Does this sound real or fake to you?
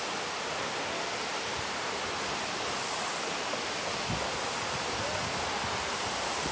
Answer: real